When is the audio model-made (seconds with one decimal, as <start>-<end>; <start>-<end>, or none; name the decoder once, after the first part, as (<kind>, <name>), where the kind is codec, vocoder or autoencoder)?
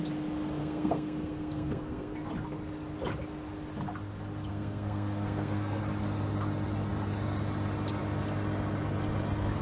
0.6-2.3 (codec, SNAC); 4.5-5.8